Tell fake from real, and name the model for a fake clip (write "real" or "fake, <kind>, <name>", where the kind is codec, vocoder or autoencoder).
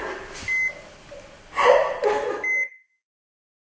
real